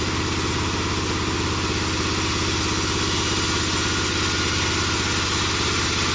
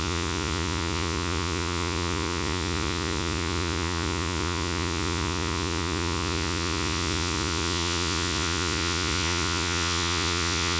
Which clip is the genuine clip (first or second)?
first